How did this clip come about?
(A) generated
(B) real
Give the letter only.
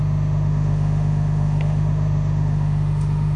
A